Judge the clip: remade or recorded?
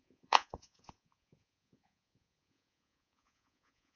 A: remade